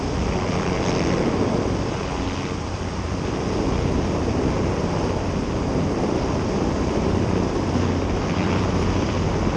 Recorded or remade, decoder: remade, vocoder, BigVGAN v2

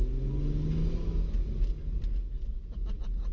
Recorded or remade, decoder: recorded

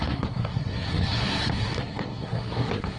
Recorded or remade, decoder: remade, codec, SNAC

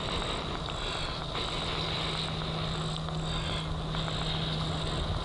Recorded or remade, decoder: recorded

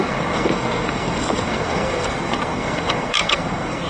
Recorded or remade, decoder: remade, codec, SNAC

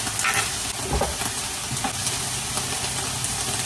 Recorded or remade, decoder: recorded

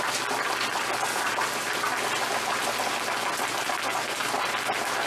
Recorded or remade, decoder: recorded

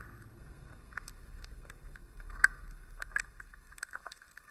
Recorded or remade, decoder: remade, codec, SNAC